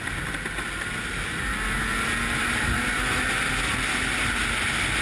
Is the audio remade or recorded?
recorded